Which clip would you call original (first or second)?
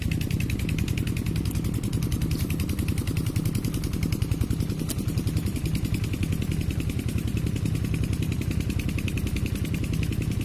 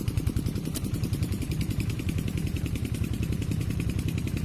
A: first